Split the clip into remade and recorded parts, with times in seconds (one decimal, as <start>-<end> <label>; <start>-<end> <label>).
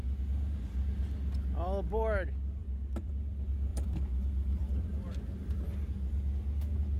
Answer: 0.0-2.6 recorded; 2.6-3.1 remade; 3.1-3.7 recorded; 3.7-5.6 remade; 5.6-7.0 recorded